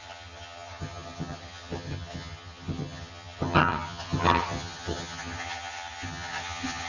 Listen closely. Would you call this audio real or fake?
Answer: fake